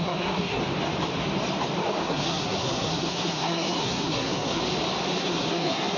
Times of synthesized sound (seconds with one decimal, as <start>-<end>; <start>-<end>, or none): 0.0-0.6; 2.0-4.6; 5.2-6.0